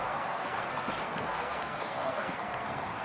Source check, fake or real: fake